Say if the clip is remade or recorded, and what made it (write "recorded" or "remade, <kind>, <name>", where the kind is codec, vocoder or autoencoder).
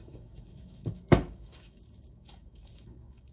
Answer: remade, autoencoder, DAC-VAE